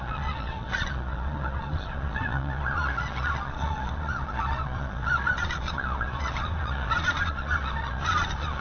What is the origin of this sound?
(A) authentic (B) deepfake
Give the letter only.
B